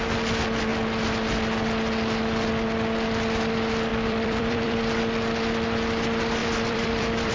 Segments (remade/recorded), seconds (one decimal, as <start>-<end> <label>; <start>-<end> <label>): 0.0-3.9 recorded; 3.9-5.0 remade; 5.0-6.4 recorded; 6.4-7.3 remade